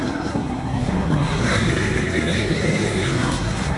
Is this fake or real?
fake